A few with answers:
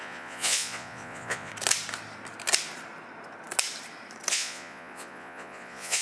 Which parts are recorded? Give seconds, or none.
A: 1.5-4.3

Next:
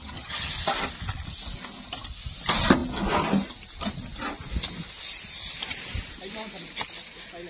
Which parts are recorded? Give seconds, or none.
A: 0.5-7.5

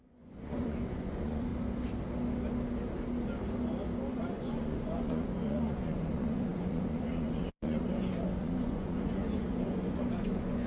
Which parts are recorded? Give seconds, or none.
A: 1.5-4.1

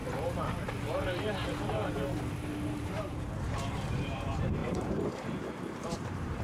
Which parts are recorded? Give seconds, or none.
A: 0.0-2.8

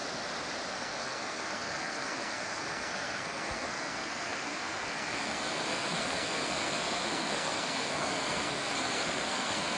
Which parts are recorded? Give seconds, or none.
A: 0.0-0.7

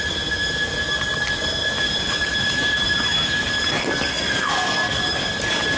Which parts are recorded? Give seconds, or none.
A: 0.0-4.1; 5.0-5.8

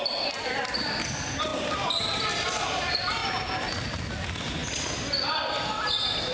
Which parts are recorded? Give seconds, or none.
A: 0.0-6.3